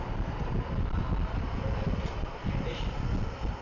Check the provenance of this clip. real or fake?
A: real